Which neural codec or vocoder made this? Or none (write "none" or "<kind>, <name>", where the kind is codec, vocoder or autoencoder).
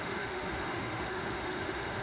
autoencoder, DAC-VAE